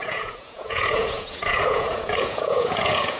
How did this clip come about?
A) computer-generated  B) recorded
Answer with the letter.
A